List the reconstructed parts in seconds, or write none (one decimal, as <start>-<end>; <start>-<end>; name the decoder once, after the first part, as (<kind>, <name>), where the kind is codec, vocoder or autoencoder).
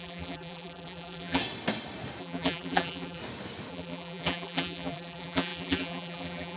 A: 0.0-1.4 (vocoder, BigVGAN v2); 2.2-3.2; 3.7-6.6